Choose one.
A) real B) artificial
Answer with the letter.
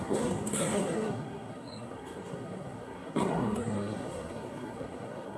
B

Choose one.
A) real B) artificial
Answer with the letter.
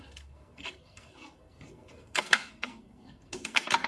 B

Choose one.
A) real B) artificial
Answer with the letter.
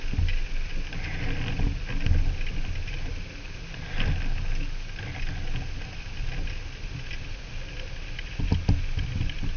A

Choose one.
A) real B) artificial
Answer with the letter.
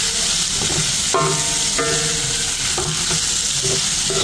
A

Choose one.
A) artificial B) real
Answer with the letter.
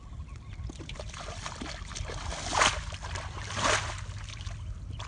B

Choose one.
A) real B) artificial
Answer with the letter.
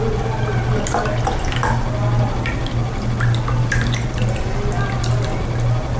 A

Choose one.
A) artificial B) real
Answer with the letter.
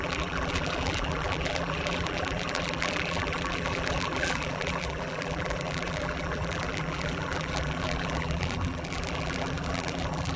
A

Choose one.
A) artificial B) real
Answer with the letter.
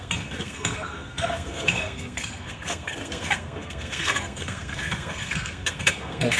A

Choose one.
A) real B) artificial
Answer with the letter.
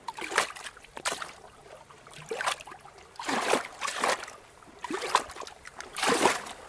A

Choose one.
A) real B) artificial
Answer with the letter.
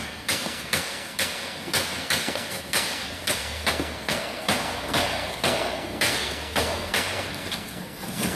B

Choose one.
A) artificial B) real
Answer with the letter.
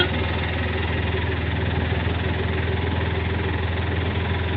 B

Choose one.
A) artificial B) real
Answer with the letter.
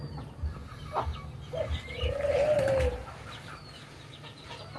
B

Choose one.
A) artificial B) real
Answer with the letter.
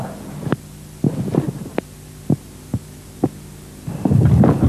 B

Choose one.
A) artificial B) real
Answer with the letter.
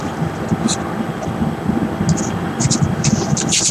B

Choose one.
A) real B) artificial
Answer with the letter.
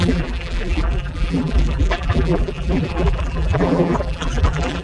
B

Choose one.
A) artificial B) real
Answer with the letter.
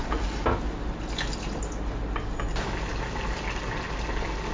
B